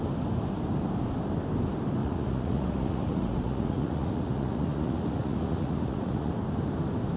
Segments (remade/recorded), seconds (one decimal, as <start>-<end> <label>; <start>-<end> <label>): 0.0-2.0 recorded; 2.0-6.3 remade; 6.3-7.2 recorded